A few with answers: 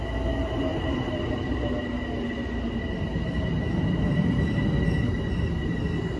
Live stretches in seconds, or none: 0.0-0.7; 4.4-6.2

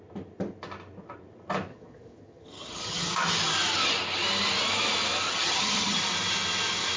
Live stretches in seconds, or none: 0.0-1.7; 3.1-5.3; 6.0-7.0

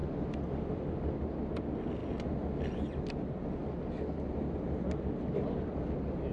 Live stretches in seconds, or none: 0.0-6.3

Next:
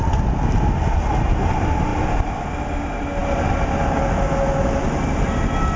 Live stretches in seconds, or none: 0.0-5.8

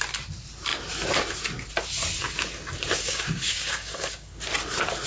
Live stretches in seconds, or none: 0.0-3.0; 4.4-5.1